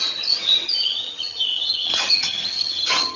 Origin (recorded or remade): remade